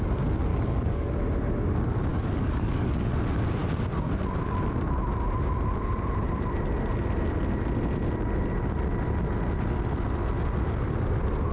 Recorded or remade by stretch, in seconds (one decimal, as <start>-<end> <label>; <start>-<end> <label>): 0.0-0.5 recorded; 0.5-1.1 remade; 1.1-2.1 recorded; 2.1-3.1 remade; 3.1-11.5 recorded